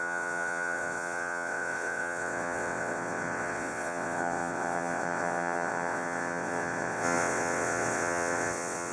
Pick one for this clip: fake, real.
fake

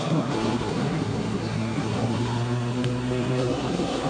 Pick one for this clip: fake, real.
fake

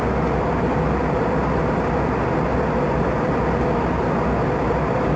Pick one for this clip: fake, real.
real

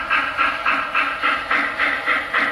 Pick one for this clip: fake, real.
fake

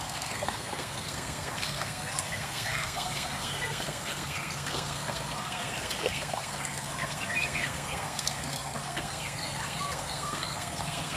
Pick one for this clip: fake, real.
fake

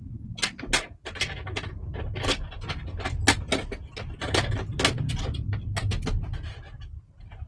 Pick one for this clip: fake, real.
real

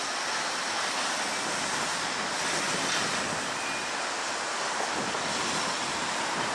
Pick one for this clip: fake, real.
real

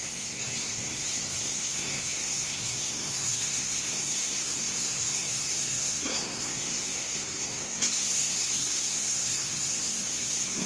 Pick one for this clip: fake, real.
fake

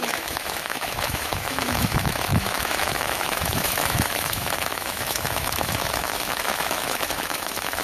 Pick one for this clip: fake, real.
fake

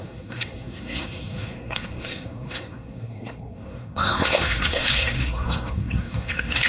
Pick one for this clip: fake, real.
fake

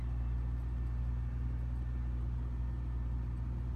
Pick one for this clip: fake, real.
real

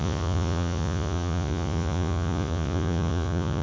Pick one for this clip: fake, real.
fake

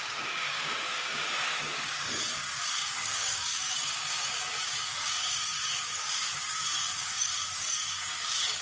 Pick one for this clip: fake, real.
fake